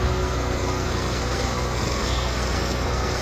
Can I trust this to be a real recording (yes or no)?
no